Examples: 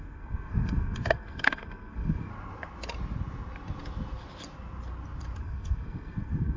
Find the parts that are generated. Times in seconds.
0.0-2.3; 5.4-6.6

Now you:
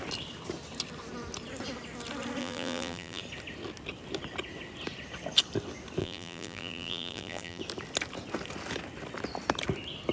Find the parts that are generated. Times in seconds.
2.4-3.2; 6.0-7.6

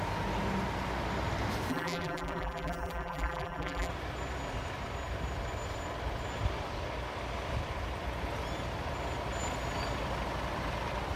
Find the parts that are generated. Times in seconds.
1.7-3.9

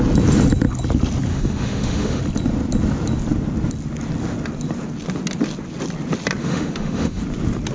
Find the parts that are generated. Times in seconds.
1.3-2.2; 6.4-7.2

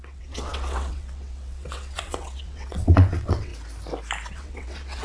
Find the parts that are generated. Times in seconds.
0.0-3.5; 4.3-5.0